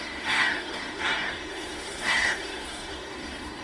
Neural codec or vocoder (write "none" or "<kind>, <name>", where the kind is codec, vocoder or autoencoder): codec, SNAC